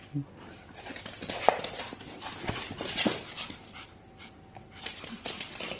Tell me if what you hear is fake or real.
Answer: real